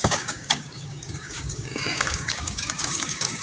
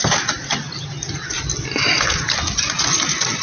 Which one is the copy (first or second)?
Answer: first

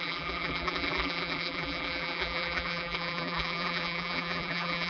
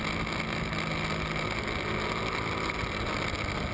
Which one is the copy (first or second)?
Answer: first